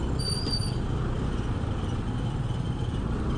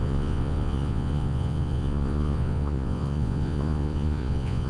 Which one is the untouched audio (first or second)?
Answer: first